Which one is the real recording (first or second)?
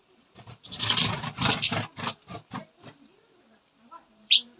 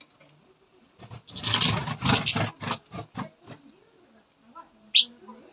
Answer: second